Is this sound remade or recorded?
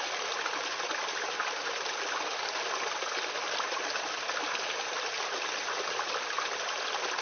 recorded